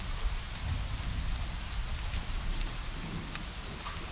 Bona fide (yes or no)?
yes